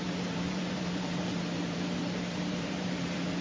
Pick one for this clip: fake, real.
fake